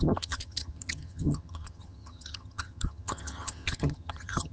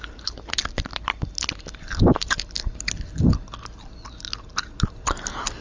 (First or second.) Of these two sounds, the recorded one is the second